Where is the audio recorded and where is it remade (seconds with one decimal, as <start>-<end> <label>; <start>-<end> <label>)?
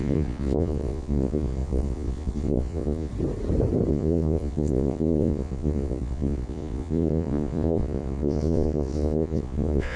0.0-3.1 remade; 3.1-3.9 recorded; 3.9-10.0 remade